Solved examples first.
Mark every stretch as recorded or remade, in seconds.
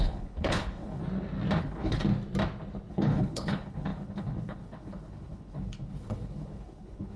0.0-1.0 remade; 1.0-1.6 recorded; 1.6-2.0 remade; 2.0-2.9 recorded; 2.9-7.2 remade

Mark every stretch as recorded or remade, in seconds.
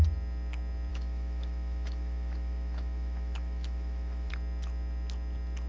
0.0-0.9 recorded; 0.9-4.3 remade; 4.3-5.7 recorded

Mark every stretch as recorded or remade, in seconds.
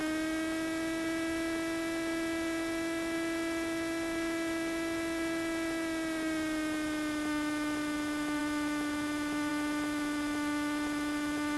0.0-11.6 recorded